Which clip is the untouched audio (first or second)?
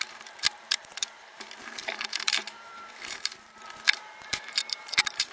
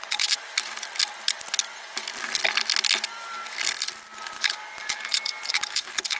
second